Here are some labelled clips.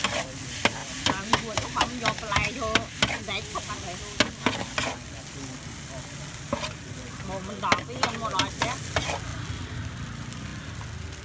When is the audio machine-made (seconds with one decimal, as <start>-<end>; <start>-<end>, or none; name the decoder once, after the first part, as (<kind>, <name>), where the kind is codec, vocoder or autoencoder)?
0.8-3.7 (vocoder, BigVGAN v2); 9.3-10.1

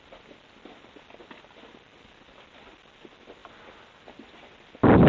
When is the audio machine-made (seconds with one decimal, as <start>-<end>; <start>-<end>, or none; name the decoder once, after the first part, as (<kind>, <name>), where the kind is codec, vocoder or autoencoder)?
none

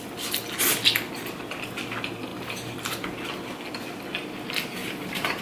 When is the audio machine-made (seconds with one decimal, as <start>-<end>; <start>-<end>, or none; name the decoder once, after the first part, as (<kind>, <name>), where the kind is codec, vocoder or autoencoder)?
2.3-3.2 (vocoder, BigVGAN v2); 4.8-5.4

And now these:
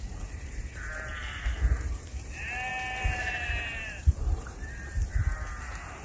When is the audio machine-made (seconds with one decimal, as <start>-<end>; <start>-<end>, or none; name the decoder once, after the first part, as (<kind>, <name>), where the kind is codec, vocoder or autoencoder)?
0.0-6.0 (vocoder, BigVGAN v2)

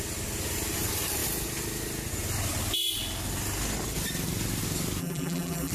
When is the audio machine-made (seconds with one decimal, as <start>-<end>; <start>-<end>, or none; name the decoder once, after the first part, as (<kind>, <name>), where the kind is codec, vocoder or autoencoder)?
5.0-5.7 (vocoder, BigVGAN v2)